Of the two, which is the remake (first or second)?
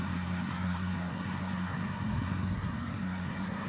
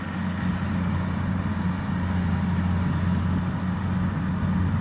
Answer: first